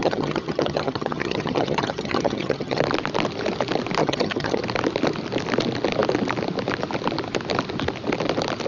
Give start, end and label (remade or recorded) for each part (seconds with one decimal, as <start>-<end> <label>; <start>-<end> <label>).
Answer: 0.0-2.8 remade; 2.8-4.0 recorded; 4.0-4.6 remade; 4.6-8.7 recorded